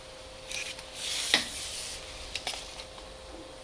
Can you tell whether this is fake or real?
real